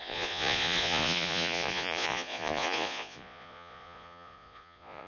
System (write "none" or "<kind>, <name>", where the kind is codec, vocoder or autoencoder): vocoder, Vocos